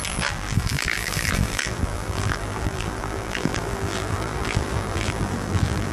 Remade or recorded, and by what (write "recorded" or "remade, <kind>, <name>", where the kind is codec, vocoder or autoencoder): remade, vocoder, BigVGAN v2